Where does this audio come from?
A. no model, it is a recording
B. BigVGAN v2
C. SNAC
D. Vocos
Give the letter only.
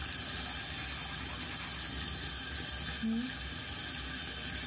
A